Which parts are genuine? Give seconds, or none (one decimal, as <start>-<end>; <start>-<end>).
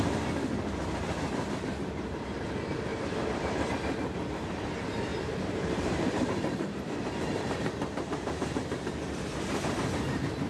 0.0-2.9; 3.7-5.1; 9.2-10.5